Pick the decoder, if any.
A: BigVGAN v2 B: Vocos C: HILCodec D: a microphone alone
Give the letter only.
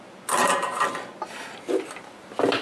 D